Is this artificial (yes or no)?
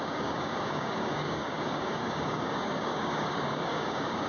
yes